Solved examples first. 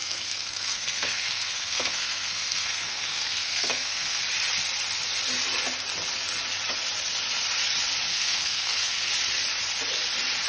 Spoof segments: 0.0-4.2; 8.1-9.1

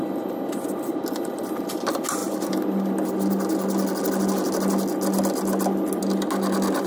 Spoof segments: none

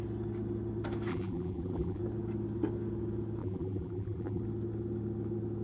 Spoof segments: 1.1-2.0; 3.4-4.4

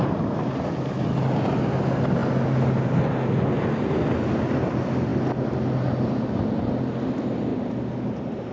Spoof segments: 7.5-8.5